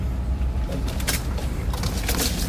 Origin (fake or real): real